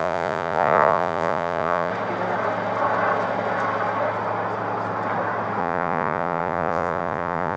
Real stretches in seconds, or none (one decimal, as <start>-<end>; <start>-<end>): 1.9-5.6